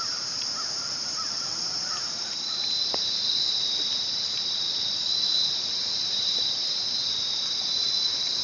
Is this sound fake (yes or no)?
yes